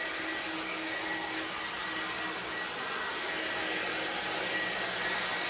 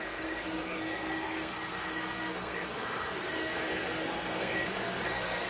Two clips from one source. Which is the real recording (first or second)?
first